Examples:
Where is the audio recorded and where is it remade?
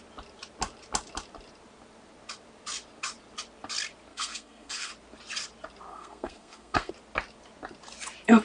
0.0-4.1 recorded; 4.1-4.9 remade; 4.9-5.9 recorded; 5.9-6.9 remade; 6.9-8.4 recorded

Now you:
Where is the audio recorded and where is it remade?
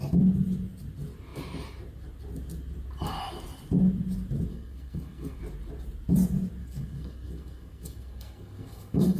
0.0-4.5 recorded; 4.5-5.4 remade; 5.4-6.6 recorded; 6.6-9.2 remade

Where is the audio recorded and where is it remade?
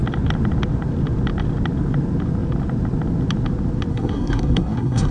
0.0-3.9 recorded; 3.9-5.1 remade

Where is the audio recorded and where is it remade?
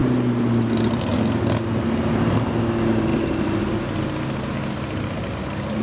0.0-5.8 recorded